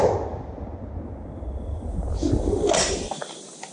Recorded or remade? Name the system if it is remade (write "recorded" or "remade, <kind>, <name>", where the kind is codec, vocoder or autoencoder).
recorded